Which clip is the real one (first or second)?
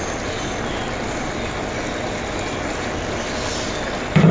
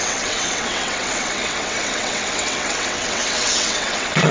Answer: first